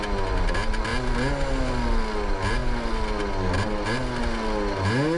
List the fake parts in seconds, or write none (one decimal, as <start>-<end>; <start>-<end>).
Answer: none

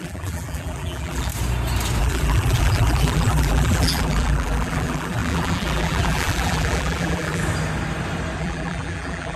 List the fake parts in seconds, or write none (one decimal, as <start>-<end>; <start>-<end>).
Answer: 0.0-1.3; 2.0-7.4; 8.4-9.4

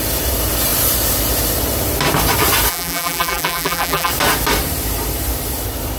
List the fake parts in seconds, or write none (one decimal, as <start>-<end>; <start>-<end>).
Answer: 2.7-4.1

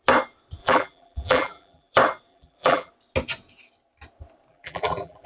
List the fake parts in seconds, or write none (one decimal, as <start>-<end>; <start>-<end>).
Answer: 0.6-1.9; 2.3-2.9; 4.5-5.3